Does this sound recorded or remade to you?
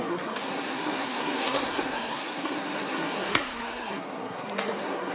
remade